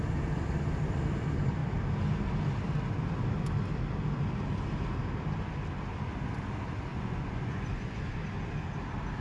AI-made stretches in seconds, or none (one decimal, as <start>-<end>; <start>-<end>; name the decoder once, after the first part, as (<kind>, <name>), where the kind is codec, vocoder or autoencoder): 6.9-8.2 (vocoder, Vocos)